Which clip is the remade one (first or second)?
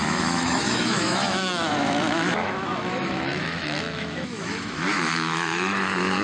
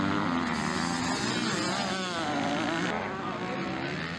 first